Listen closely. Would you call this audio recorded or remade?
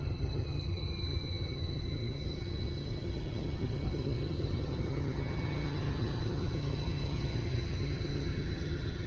remade